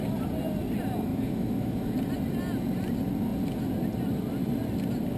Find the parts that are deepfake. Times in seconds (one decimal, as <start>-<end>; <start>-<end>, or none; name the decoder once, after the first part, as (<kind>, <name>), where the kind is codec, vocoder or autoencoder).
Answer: 1.1-1.8 (autoencoder, DAC-VAE)